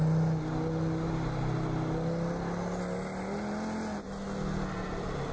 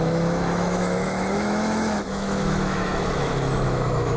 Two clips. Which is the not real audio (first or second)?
second